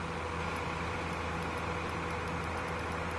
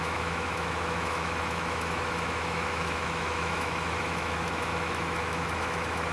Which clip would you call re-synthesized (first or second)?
second